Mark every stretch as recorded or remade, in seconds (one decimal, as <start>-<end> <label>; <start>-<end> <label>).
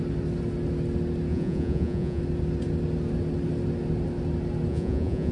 0.0-1.3 recorded; 1.3-2.2 remade; 2.2-4.7 recorded; 4.7-5.3 remade